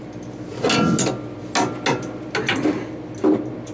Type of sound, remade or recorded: recorded